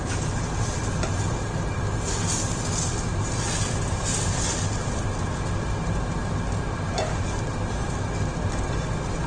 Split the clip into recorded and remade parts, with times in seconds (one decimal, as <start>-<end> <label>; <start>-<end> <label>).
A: 0.0-9.3 recorded